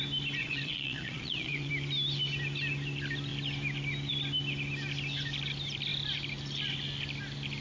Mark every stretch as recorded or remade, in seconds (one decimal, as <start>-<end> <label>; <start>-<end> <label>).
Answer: 0.0-0.4 recorded; 0.4-1.7 remade; 1.7-7.6 recorded